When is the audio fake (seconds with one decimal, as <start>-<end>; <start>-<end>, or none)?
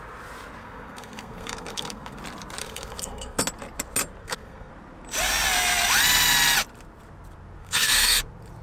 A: 0.6-2.2; 2.6-3.4; 4.2-4.7; 7.6-8.2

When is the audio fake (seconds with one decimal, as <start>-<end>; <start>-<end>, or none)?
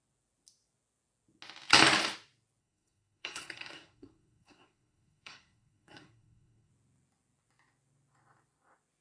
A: 2.6-6.7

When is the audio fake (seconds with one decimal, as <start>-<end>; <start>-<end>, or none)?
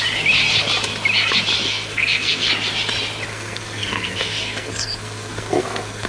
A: 1.6-2.5; 3.3-6.1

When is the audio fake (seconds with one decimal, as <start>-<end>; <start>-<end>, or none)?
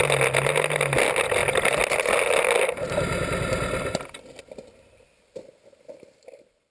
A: none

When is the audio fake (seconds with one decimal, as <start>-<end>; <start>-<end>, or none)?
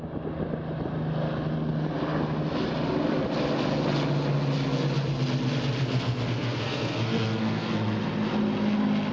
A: 5.8-7.7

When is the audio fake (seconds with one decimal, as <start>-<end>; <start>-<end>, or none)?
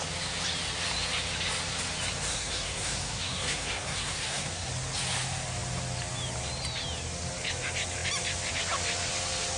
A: 2.3-4.7